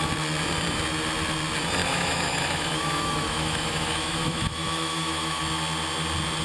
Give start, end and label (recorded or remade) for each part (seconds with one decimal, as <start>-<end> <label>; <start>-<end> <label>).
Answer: 0.0-1.8 recorded; 1.8-5.4 remade; 5.4-6.4 recorded